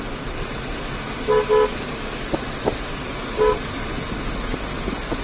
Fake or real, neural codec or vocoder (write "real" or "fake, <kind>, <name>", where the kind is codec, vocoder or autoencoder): real